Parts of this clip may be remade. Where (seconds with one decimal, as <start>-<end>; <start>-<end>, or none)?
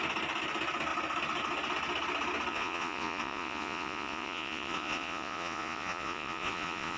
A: 2.5-7.0